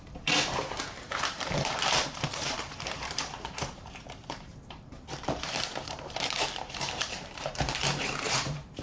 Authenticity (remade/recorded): remade